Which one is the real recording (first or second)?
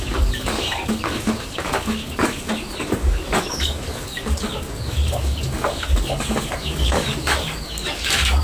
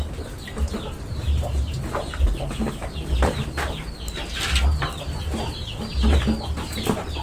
second